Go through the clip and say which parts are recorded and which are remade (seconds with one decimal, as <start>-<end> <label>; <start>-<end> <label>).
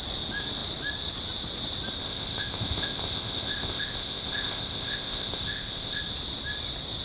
0.0-2.0 recorded; 2.0-6.0 remade; 6.0-7.0 recorded